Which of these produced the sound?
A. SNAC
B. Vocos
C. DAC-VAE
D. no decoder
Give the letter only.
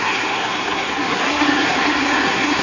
A